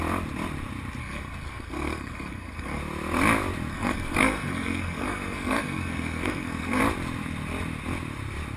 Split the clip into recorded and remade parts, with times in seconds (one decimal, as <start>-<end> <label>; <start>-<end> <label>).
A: 0.0-1.0 recorded; 1.0-2.8 remade; 2.8-3.7 recorded; 3.7-6.8 remade; 6.8-8.6 recorded